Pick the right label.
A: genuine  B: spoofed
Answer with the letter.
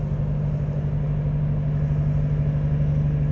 A